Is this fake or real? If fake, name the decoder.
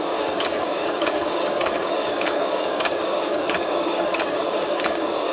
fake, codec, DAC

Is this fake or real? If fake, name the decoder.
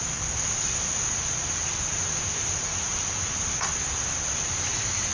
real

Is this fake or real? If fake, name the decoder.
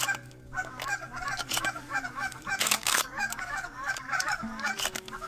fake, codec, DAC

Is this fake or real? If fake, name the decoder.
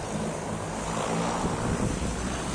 real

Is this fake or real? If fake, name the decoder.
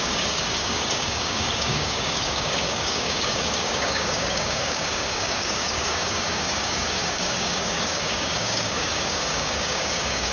fake, codec, DAC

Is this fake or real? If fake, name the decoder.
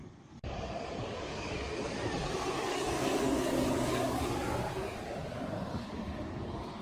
fake, codec, DAC